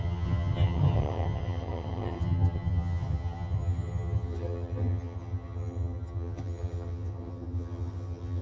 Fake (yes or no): yes